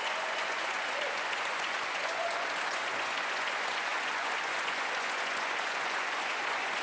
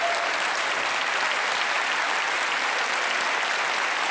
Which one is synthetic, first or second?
first